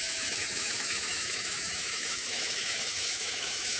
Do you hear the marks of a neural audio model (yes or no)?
yes